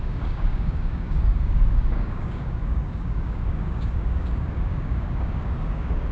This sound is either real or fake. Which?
fake